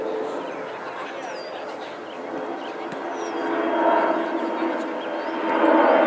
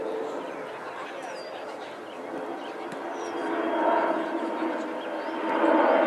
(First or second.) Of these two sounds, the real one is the first